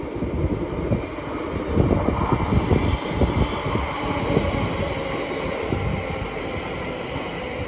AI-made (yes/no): no